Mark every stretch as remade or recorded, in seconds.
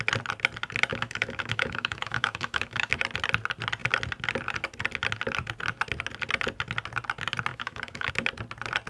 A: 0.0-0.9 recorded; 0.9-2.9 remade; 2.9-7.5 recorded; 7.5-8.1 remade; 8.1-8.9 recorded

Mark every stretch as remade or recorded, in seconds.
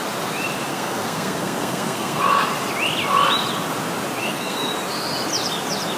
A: 0.0-0.7 recorded; 0.7-2.2 remade; 2.2-4.2 recorded; 4.2-4.7 remade; 4.7-6.0 recorded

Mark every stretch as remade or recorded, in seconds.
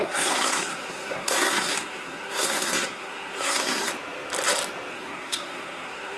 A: 0.0-3.9 remade; 3.9-4.9 recorded; 4.9-6.2 remade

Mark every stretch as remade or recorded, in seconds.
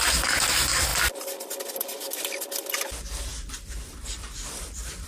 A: 0.0-5.1 remade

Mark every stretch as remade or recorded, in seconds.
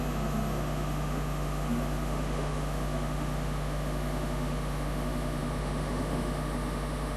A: 0.0-7.2 remade